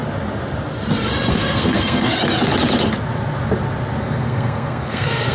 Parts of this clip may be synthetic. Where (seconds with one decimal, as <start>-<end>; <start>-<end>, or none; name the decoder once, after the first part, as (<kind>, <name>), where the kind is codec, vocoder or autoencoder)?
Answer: 1.3-2.2 (codec, SNAC); 4.0-5.3